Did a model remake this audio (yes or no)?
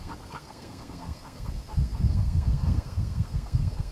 yes